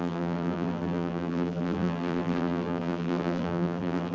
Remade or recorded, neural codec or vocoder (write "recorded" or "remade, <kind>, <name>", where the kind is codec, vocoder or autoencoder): remade, vocoder, BigVGAN v2